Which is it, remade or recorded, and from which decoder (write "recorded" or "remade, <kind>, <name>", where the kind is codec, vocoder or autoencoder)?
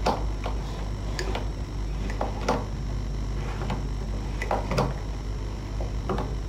recorded